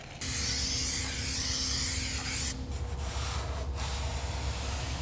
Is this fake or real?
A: real